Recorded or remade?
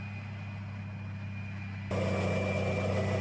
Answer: recorded